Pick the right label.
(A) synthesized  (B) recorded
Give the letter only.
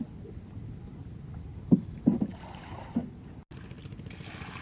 B